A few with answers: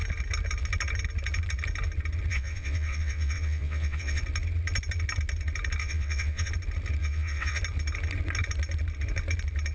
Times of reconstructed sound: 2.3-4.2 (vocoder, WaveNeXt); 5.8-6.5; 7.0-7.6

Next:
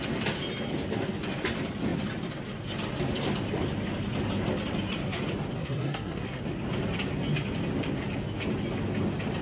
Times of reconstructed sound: 5.6-6.4 (codec, SNAC)

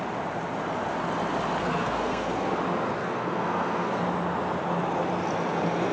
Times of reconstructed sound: 1.6-2.5 (codec, SNAC); 3.0-4.0

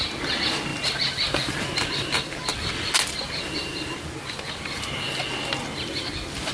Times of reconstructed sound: none

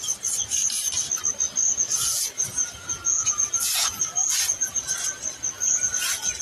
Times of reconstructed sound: 1.7-4.8 (vocoder, Vocos)

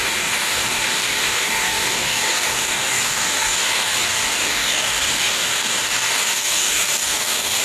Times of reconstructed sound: 0.0-7.6 (codec, DAC)

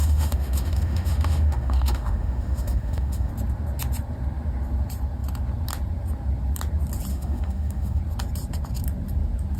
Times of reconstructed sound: 0.0-3.3 (autoencoder, DAC-VAE); 7.1-8.0

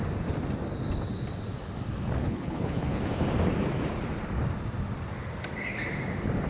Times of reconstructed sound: 2.2-3.0 (codec, HILCodec)